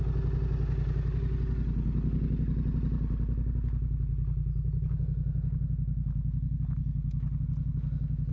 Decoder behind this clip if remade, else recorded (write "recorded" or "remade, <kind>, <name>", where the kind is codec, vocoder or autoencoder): recorded